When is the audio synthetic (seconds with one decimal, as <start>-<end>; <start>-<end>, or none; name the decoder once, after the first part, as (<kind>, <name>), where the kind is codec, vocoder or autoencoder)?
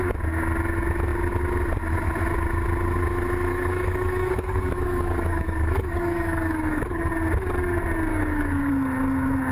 3.5-7.1 (codec, DAC); 8.1-8.7